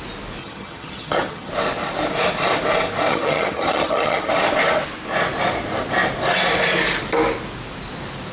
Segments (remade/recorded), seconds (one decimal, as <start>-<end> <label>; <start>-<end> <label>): 0.0-0.4 recorded; 0.4-1.5 remade; 1.5-3.1 recorded; 3.1-4.3 remade; 4.3-8.3 recorded